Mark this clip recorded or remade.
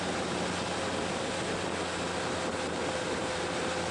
recorded